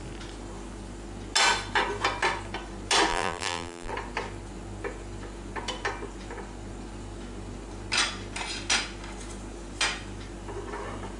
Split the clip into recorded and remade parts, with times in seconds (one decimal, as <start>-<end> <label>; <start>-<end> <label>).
0.0-3.1 recorded; 3.1-3.9 remade; 3.9-11.2 recorded